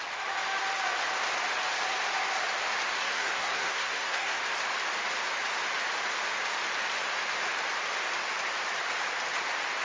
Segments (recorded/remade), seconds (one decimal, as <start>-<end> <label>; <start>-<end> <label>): 0.0-3.0 recorded; 3.0-4.4 remade; 4.4-9.8 recorded